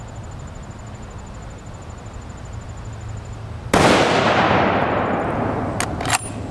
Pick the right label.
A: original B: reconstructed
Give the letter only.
A